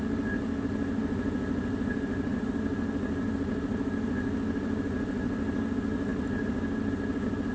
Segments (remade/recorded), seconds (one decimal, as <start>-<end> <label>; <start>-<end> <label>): 0.0-7.5 recorded